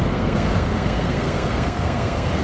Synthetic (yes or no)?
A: yes